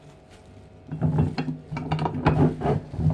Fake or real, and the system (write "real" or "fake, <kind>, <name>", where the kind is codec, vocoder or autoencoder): real